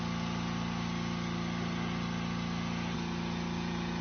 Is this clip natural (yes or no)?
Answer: yes